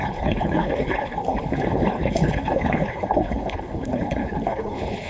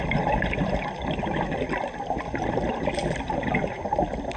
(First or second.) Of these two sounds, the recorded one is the second